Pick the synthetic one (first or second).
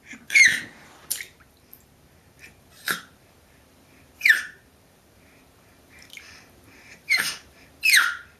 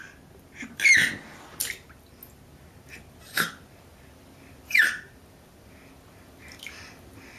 first